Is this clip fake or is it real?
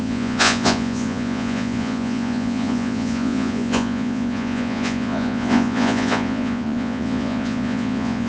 fake